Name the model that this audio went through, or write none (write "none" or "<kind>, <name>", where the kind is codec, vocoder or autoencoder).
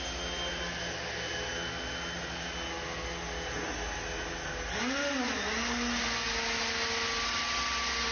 none